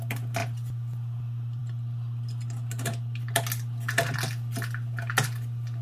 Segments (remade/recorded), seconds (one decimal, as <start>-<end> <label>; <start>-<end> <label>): 0.0-5.8 recorded